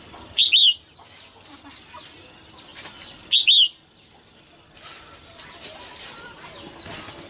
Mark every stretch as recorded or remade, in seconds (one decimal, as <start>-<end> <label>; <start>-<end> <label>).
0.0-7.3 recorded